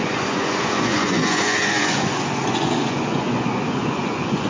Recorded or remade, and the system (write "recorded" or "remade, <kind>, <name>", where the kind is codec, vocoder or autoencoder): remade, vocoder, Vocos